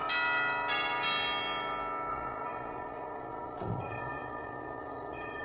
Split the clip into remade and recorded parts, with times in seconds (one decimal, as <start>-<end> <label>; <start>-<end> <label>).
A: 0.0-2.1 recorded; 2.1-5.4 remade